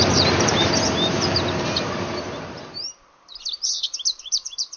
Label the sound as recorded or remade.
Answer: remade